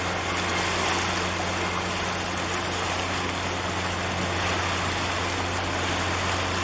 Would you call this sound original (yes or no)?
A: yes